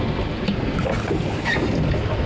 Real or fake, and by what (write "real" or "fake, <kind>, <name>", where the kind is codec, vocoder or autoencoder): real